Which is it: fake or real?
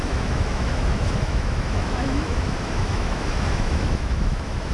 fake